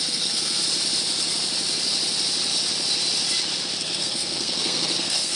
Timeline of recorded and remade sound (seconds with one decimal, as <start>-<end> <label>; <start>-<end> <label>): 0.0-0.6 remade; 0.6-3.8 recorded; 3.8-5.3 remade